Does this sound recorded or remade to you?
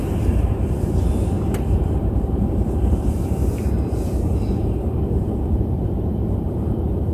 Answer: remade